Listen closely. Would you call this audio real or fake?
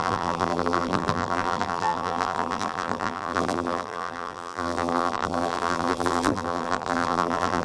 fake